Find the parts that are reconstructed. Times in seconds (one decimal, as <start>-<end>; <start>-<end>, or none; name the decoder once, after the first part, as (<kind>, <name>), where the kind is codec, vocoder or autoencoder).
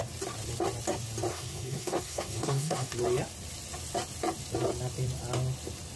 1.3-2.9 (codec, SNAC)